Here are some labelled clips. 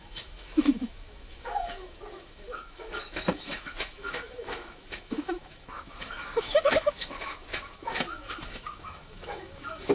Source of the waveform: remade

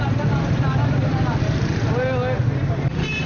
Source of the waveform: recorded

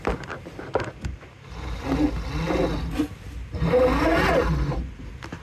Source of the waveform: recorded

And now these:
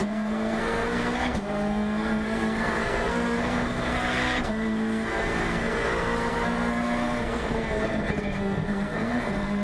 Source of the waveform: remade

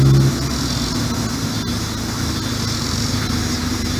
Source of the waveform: recorded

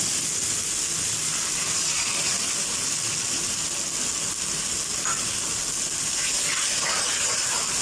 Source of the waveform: recorded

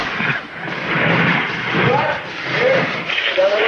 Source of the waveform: remade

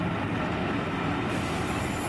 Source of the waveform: recorded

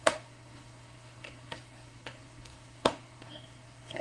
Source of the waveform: remade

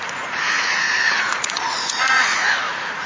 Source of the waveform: remade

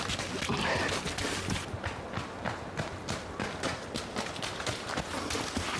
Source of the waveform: recorded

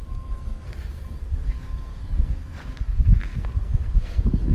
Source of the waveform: remade